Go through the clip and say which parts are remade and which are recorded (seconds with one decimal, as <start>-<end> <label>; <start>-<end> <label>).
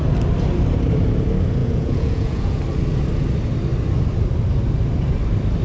0.0-1.6 recorded; 1.6-2.6 remade; 2.6-5.6 recorded